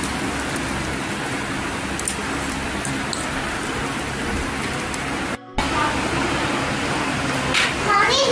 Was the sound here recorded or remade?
recorded